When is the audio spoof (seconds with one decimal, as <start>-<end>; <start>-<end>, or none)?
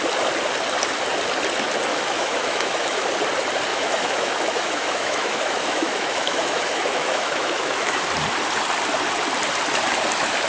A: 1.9-3.1; 3.7-8.0